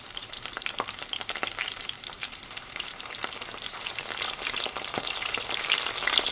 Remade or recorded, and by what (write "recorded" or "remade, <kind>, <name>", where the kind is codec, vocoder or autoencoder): remade, vocoder, BigVGAN v2